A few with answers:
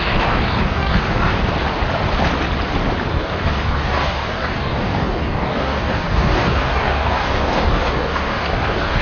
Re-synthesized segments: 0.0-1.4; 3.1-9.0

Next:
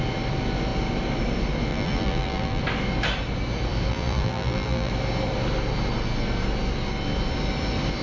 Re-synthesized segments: 1.7-2.6; 3.9-4.9